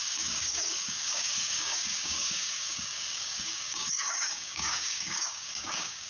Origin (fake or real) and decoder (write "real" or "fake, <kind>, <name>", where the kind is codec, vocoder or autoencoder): fake, codec, DAC